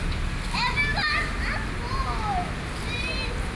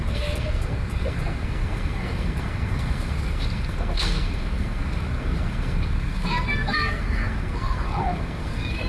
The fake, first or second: second